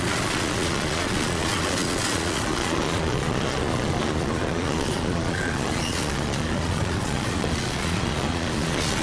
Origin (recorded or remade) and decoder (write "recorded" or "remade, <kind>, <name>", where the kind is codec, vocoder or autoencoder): remade, vocoder, Vocos